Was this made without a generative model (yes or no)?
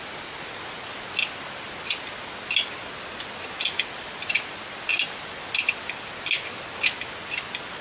yes